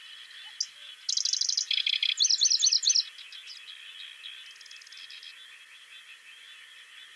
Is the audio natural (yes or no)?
yes